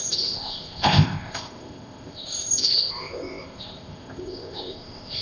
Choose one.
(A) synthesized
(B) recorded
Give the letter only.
A